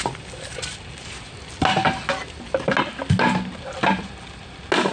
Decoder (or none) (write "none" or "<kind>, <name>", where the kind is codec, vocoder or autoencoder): none